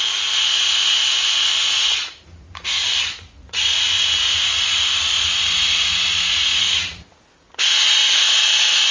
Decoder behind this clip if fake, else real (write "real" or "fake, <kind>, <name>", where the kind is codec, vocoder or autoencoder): fake, vocoder, Vocos